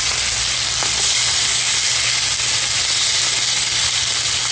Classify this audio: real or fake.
real